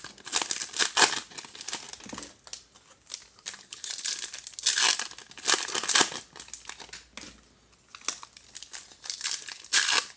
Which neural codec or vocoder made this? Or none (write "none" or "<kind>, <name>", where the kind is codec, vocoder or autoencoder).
none